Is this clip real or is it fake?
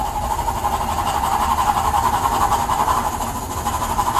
real